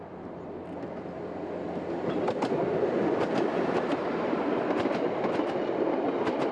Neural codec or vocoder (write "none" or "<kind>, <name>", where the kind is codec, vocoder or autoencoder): none